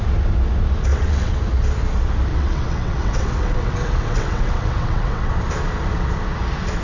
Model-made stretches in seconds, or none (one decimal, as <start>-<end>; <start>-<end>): 0.9-1.4; 2.3-5.3